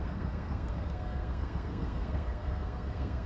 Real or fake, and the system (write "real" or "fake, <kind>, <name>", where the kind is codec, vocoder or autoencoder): fake, codec, SNAC